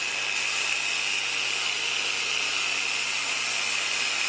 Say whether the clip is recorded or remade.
recorded